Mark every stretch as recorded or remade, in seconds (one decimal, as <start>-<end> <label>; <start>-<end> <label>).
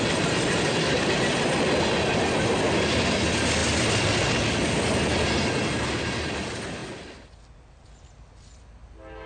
0.0-9.3 recorded